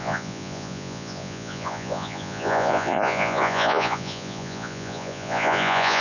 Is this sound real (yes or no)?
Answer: no